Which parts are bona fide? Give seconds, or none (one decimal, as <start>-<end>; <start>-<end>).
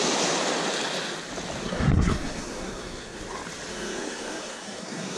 0.0-1.6; 3.2-3.7